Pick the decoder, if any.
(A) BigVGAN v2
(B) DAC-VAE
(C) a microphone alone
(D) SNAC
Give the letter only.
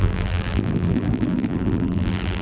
A